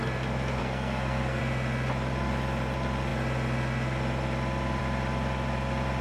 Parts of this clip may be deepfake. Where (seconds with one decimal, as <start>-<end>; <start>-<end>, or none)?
0.6-1.4